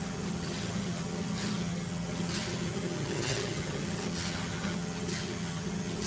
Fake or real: fake